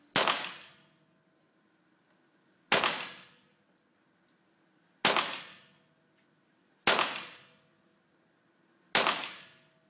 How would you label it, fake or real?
real